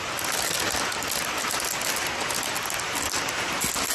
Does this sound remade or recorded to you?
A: recorded